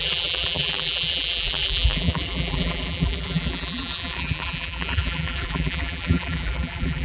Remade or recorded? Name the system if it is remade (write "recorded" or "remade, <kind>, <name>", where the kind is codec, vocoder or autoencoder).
remade, vocoder, BigVGAN v2